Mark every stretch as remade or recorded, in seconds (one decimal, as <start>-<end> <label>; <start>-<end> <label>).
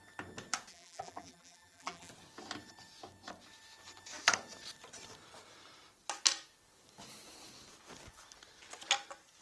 0.0-0.7 recorded; 0.7-2.1 remade; 2.1-9.4 recorded